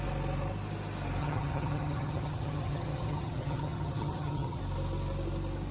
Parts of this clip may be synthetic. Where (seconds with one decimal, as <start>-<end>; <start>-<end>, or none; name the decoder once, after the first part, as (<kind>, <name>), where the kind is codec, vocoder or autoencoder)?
1.2-4.6 (vocoder, HiFi-GAN)